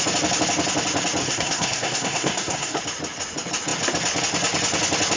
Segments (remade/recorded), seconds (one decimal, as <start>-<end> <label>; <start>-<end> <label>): 0.0-1.2 recorded; 1.2-2.8 remade; 2.8-5.2 recorded

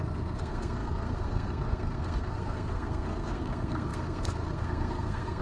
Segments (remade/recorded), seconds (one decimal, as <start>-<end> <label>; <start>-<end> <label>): 0.0-5.4 remade

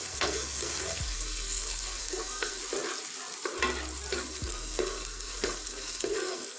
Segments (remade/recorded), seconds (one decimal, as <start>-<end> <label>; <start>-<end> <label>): 0.0-2.6 remade; 2.6-4.1 recorded; 4.1-6.6 remade

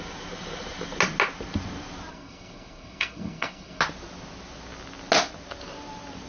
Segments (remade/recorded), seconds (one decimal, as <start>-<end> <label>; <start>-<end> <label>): 0.0-2.1 recorded; 2.1-3.8 remade; 3.8-6.3 recorded

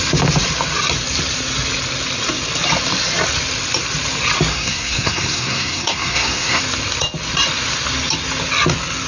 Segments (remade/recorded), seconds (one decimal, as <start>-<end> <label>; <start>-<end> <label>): 0.0-4.5 recorded; 4.5-6.6 remade; 6.6-9.1 recorded

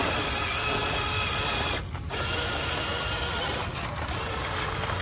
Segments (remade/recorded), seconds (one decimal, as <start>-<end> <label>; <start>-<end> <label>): 0.0-5.0 recorded

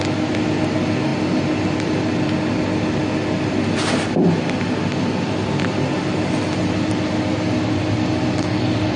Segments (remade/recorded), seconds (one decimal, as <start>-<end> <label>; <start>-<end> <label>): 0.0-9.0 recorded